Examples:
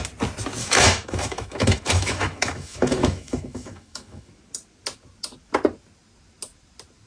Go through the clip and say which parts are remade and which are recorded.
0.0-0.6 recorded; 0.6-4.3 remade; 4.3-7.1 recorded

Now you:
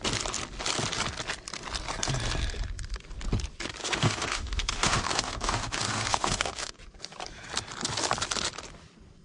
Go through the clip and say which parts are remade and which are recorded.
0.0-3.8 recorded; 3.8-6.8 remade; 6.8-9.2 recorded

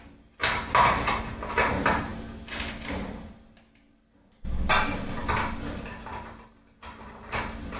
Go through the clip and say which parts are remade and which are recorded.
0.0-7.8 recorded

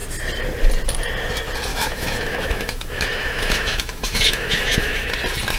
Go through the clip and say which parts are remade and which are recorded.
0.0-1.7 recorded; 1.7-5.1 remade; 5.1-5.6 recorded

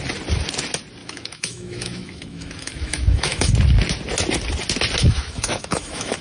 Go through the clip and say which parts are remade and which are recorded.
0.0-1.0 recorded; 1.0-3.5 remade; 3.5-5.0 recorded; 5.0-6.2 remade

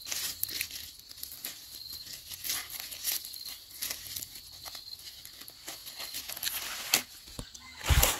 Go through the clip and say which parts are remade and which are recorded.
0.0-8.2 recorded

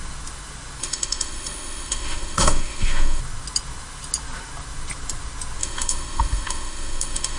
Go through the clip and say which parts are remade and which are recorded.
0.0-0.8 recorded; 0.8-3.2 remade; 3.2-5.6 recorded; 5.6-7.4 remade

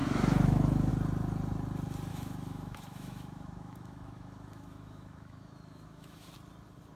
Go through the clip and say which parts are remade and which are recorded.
0.0-0.9 remade; 0.9-2.1 recorded; 2.1-6.3 remade; 6.3-7.0 recorded